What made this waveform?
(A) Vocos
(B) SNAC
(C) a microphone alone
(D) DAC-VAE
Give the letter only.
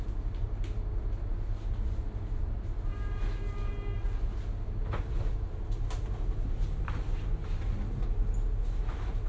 C